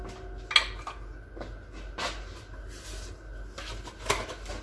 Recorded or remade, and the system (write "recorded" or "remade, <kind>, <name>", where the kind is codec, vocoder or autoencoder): recorded